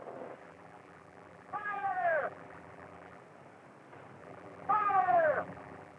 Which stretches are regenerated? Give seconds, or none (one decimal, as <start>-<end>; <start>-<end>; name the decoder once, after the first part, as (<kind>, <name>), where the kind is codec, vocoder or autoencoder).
0.4-3.2 (vocoder, BigVGAN v2); 4.2-6.0

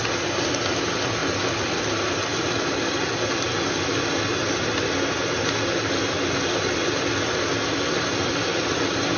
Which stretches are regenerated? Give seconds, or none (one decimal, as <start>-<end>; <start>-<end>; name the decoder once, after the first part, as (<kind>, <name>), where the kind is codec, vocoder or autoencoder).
none

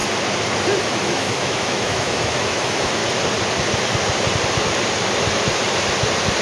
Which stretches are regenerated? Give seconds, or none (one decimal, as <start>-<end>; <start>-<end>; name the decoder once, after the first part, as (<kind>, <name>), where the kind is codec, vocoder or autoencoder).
0.8-3.0 (autoencoder, DAC-VAE)